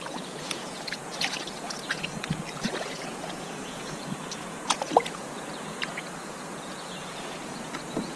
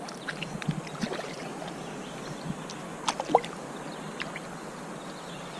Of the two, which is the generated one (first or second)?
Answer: first